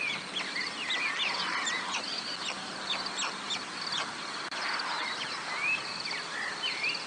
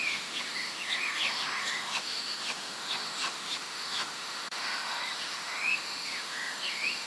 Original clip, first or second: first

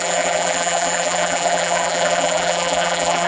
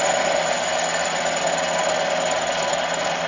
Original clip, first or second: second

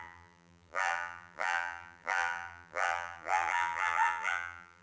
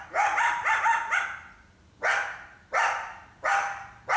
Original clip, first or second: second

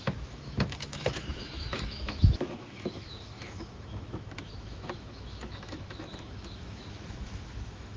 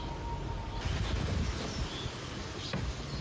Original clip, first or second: second